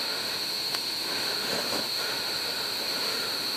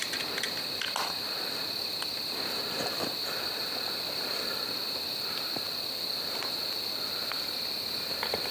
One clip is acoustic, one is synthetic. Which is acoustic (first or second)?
second